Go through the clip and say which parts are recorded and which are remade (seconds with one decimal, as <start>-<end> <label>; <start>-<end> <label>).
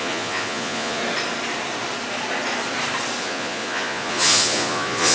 0.0-1.0 remade; 1.0-3.2 recorded; 3.2-5.1 remade